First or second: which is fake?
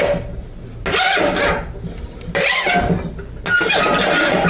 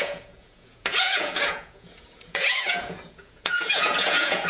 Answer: second